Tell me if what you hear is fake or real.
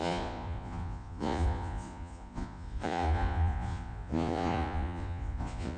fake